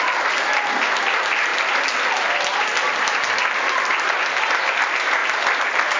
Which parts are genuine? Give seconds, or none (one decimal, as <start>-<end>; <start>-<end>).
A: 0.0-1.5; 4.2-5.2